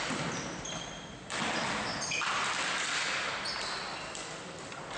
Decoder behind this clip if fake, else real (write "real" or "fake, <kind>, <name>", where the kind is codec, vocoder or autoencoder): real